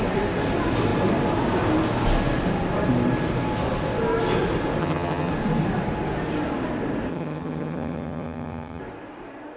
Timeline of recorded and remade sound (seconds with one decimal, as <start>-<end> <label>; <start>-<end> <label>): 0.0-4.8 recorded; 4.8-5.3 remade; 5.3-7.1 recorded; 7.1-8.8 remade; 8.8-9.6 recorded